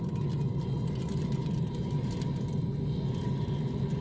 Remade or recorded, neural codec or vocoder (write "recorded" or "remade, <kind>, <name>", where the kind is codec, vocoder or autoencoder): recorded